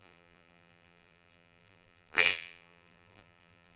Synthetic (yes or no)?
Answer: yes